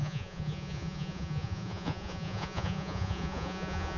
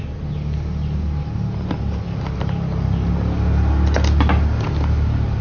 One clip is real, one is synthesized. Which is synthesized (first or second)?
first